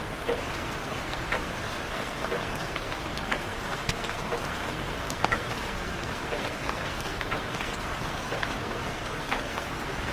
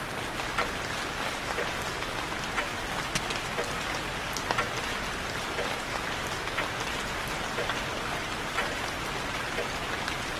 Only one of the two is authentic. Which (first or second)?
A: second